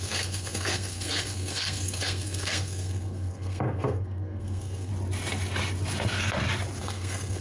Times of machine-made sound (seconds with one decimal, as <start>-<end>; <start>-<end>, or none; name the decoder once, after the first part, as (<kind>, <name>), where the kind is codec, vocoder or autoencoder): 0.0-4.9 (codec, SNAC); 6.8-7.4